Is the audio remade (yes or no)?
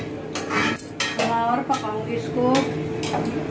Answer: no